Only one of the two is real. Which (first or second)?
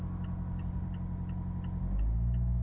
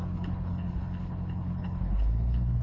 first